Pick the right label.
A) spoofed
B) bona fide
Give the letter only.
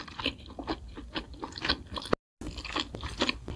B